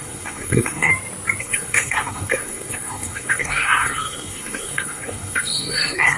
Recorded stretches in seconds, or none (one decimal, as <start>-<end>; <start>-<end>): 0.9-1.4